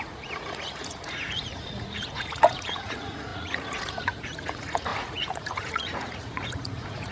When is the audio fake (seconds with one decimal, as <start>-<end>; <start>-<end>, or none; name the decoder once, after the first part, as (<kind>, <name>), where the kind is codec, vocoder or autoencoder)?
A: 0.0-7.1 (vocoder, Vocos)

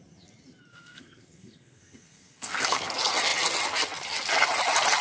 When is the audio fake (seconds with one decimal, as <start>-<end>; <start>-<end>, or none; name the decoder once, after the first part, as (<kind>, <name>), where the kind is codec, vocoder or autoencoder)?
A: 0.7-2.9 (codec, SNAC)